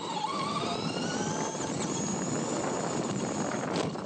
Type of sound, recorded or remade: recorded